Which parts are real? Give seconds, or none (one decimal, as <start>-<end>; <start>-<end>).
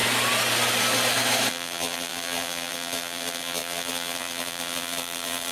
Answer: 0.0-1.5